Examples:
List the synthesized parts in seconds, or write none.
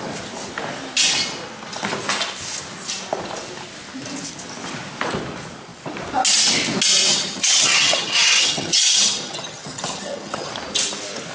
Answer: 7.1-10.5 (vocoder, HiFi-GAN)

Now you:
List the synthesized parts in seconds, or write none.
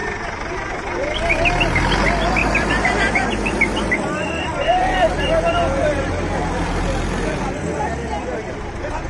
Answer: 2.4-7.6 (vocoder, BigVGAN v2)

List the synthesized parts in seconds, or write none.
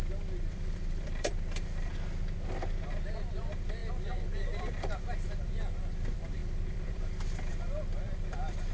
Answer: 0.0-1.9 (vocoder, BigVGAN v2); 2.9-8.7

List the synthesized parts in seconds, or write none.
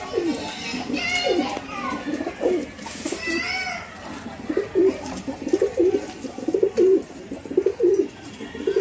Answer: none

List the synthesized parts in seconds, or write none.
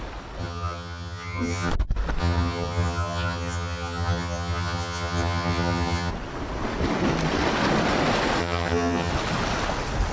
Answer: 0.4-1.7 (vocoder, HiFi-GAN); 2.2-6.1; 8.4-9.1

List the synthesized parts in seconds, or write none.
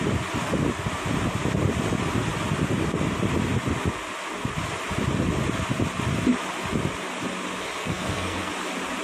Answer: 7.8-8.5 (codec, SNAC)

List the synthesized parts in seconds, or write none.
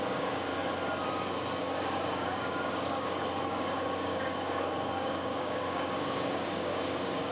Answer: 0.0-0.5 (codec, DAC); 1.6-7.3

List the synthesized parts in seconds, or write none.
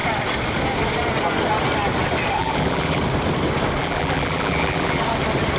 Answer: 2.4-3.0 (vocoder, BigVGAN v2); 3.8-5.0